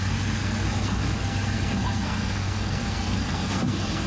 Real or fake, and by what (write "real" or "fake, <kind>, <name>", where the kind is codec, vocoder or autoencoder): fake, codec, SNAC